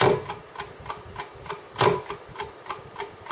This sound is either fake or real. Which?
real